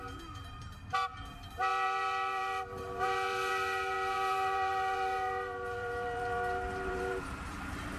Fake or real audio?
fake